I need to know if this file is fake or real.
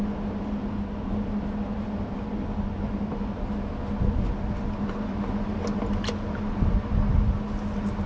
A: real